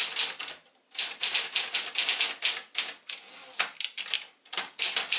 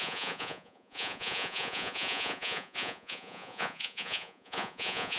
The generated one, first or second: second